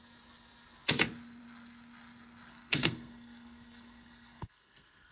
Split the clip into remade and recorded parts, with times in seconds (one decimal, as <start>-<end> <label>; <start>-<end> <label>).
0.0-2.5 recorded; 2.5-5.1 remade